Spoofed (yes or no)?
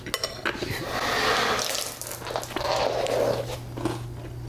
no